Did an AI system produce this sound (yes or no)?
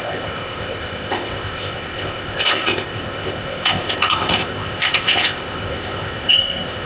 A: yes